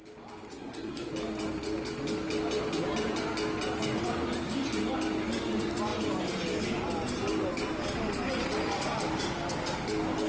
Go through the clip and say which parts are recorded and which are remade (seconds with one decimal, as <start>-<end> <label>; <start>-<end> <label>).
0.0-0.5 recorded; 0.5-1.1 remade; 1.1-10.3 recorded